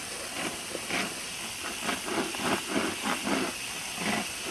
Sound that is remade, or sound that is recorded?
recorded